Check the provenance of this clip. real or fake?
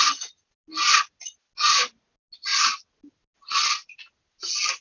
real